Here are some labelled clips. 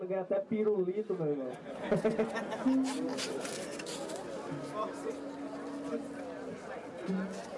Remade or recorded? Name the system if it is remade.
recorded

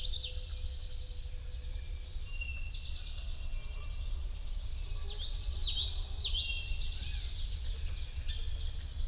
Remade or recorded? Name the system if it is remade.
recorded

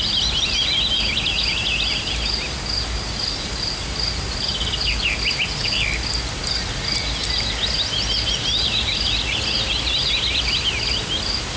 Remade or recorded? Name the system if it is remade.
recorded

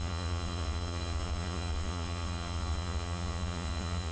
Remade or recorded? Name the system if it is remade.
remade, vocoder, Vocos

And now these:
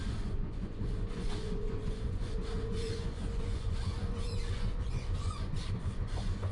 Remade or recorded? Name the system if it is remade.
remade, vocoder, Vocos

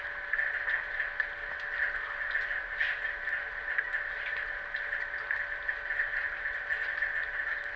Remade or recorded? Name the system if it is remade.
recorded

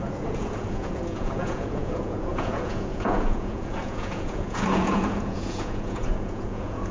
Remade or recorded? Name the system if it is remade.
remade, vocoder, Vocos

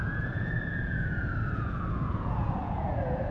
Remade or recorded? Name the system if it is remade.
remade, vocoder, Vocos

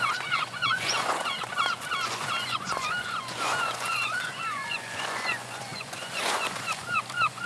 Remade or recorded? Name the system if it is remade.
remade, vocoder, Vocos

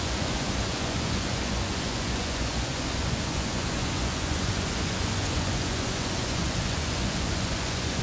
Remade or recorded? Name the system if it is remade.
remade, vocoder, Vocos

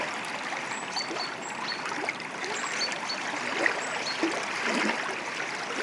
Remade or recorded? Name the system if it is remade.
recorded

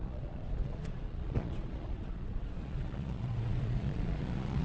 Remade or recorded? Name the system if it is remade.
remade, vocoder, Vocos